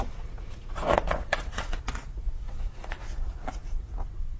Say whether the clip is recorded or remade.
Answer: remade